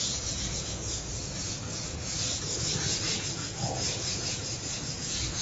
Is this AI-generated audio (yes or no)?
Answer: yes